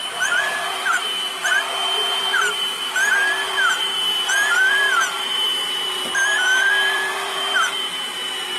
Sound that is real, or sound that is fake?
fake